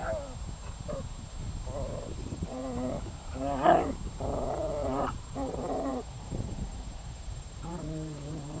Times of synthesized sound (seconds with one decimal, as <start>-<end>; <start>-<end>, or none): 2.2-2.6; 4.5-8.6